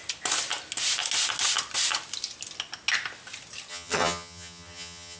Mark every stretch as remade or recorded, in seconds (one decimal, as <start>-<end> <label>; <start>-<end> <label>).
0.0-3.7 recorded; 3.7-5.2 remade

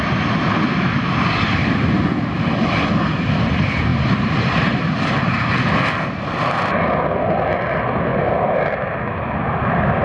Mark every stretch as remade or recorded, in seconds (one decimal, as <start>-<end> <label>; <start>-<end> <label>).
0.0-3.9 recorded; 3.9-5.5 remade; 5.5-10.0 recorded